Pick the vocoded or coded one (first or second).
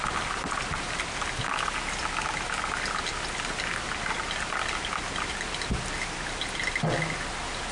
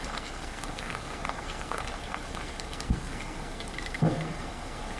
second